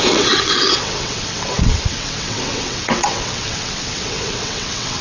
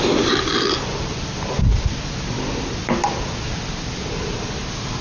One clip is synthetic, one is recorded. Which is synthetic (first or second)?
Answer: first